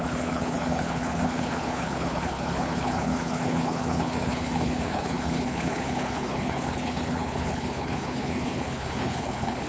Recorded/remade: remade